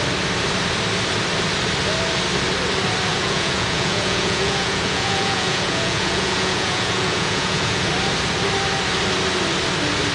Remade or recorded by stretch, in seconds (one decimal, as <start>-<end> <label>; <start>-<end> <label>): 0.0-3.1 recorded; 3.1-7.9 remade; 7.9-10.1 recorded